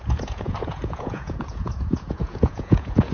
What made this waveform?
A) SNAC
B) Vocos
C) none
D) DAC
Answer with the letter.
B